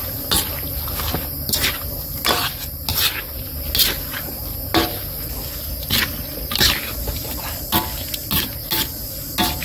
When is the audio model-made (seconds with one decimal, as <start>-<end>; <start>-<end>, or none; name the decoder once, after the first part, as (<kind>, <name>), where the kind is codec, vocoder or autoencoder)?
none